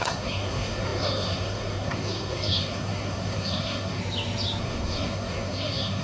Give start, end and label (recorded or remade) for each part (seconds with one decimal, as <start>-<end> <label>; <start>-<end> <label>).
0.0-4.0 remade; 4.0-4.6 recorded; 4.6-6.0 remade